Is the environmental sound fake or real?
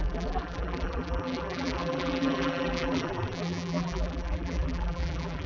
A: fake